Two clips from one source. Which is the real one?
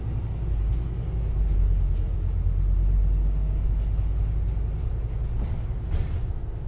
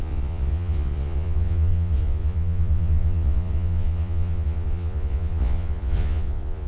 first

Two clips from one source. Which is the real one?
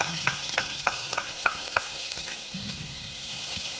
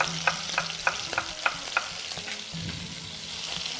second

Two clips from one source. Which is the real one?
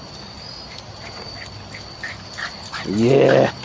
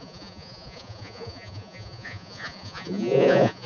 first